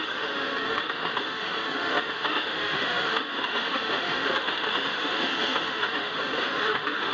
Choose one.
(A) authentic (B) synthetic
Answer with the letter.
B